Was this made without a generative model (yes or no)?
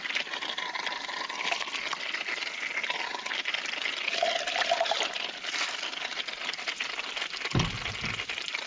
yes